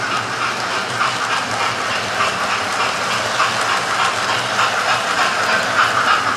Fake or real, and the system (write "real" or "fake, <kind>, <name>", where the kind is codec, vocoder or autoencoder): real